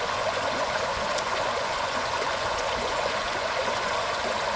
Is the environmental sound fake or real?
fake